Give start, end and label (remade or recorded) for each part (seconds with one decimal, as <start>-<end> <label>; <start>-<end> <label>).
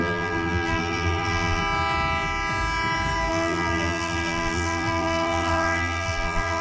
0.0-1.6 remade; 1.6-3.3 recorded; 3.3-6.6 remade